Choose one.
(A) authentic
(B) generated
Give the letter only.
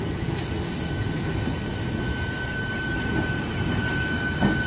A